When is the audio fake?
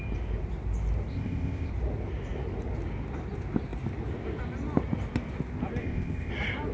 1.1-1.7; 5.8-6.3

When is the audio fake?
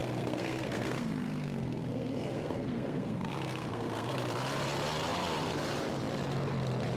0.0-4.2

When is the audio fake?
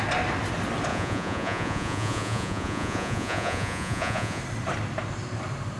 0.9-4.4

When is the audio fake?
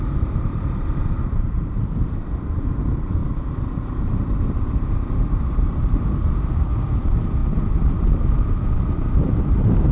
0.0-7.4; 8.0-9.9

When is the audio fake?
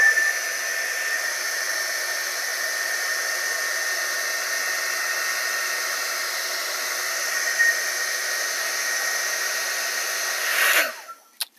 none